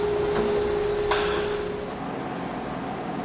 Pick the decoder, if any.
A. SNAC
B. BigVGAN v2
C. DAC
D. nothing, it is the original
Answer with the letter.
D